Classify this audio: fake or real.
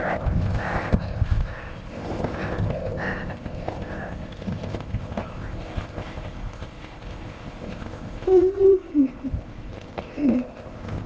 fake